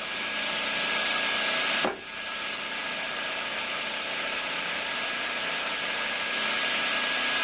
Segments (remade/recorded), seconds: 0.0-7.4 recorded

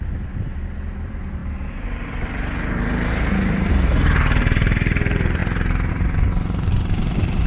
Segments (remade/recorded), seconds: 0.0-7.5 remade